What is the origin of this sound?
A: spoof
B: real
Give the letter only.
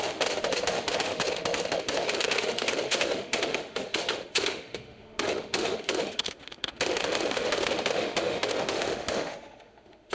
A